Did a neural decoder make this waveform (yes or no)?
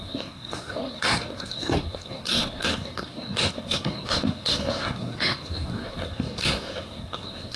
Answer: yes